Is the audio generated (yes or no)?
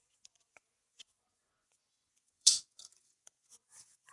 yes